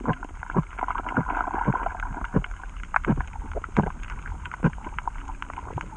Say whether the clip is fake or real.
real